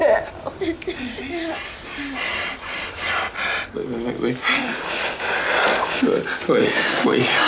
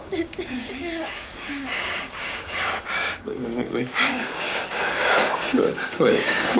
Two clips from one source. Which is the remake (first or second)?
second